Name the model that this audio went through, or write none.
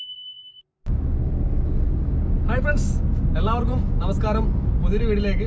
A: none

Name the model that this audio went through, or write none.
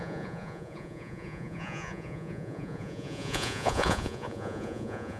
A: vocoder, Vocos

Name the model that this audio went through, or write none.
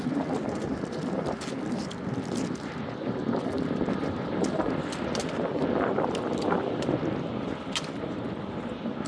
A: none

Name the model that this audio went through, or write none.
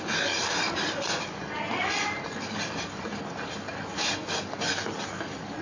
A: none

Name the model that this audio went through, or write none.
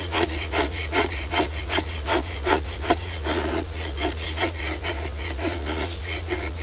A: vocoder, Vocos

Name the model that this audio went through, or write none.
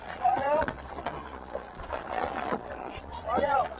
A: vocoder, Vocos